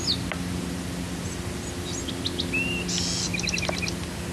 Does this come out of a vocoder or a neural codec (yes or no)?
no